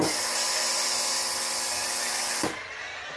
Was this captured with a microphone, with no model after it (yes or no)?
yes